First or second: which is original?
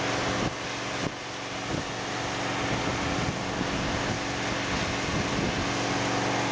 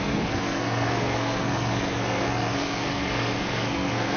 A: first